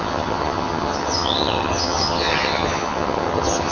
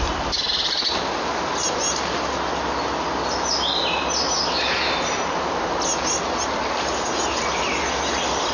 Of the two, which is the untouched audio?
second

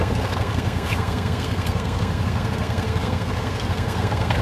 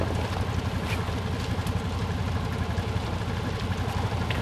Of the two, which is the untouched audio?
second